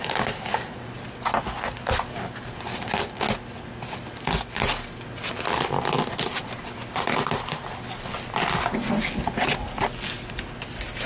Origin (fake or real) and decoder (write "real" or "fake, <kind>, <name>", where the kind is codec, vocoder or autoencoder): real